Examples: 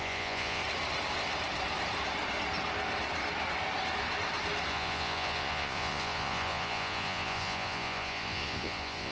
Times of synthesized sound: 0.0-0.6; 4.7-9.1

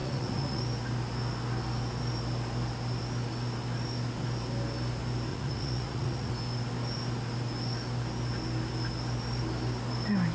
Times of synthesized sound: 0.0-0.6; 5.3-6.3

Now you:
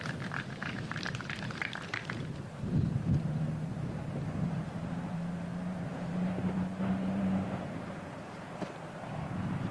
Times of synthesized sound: 0.0-9.7

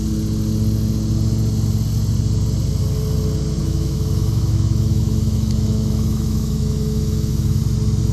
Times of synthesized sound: 3.6-7.6

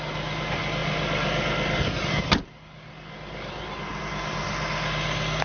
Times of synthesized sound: none